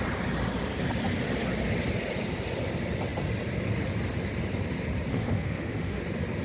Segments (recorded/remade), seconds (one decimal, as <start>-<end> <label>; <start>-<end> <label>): 0.0-5.1 recorded; 5.1-6.0 remade; 6.0-6.4 recorded